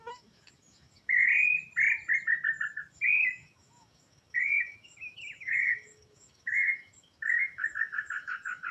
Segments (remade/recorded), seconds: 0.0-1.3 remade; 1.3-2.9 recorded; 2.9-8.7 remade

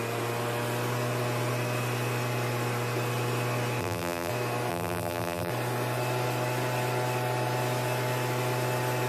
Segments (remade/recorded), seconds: 0.0-3.8 recorded; 3.8-4.3 remade; 4.3-4.7 recorded; 4.7-5.5 remade; 5.5-9.1 recorded

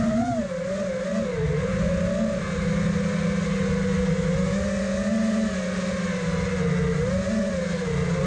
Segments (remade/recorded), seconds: 0.0-8.3 recorded

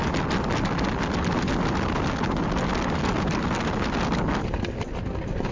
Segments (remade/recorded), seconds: 0.0-5.5 recorded

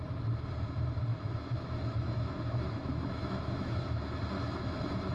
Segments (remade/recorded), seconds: 0.0-1.1 recorded; 1.1-4.2 remade; 4.2-5.1 recorded

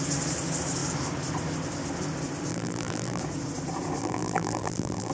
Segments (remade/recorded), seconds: 0.0-2.5 recorded; 2.5-3.2 remade; 3.2-4.0 recorded; 4.0-5.1 remade